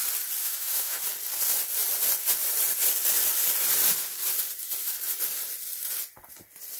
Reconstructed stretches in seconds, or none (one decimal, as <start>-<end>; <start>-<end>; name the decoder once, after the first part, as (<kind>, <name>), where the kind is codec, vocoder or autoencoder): 0.4-1.0 (autoencoder, DAC-VAE)